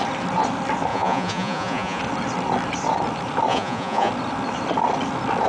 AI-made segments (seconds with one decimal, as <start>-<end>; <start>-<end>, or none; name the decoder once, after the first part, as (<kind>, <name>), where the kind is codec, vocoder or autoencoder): 0.9-2.0 (vocoder, Vocos); 3.5-4.1